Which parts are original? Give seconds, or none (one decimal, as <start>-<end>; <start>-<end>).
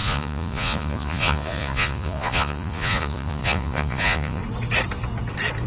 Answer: 4.4-5.7